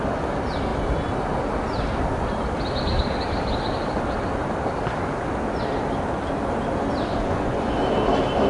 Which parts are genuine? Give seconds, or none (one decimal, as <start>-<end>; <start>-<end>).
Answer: 0.0-7.1; 7.7-8.5